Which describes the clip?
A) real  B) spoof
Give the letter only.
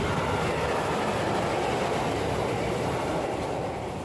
A